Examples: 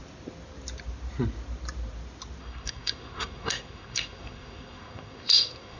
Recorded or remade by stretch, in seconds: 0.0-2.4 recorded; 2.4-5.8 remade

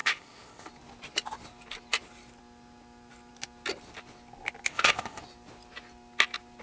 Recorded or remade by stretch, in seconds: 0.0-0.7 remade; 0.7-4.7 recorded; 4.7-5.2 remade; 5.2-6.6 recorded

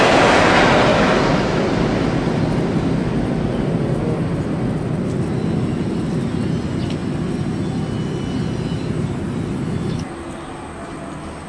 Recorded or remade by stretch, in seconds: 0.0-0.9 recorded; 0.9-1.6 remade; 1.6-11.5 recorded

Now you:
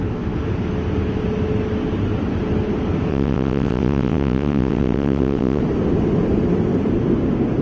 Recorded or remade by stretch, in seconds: 0.0-3.1 recorded; 3.1-5.6 remade; 5.6-7.6 recorded